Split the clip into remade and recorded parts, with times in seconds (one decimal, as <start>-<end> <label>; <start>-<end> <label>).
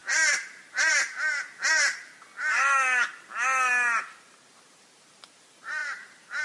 0.0-2.1 remade; 2.1-4.2 recorded; 4.2-6.4 remade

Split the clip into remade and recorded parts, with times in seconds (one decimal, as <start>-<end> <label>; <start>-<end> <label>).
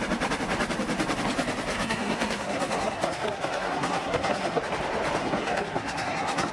0.0-1.7 recorded; 1.7-4.6 remade; 4.6-5.2 recorded; 5.2-6.5 remade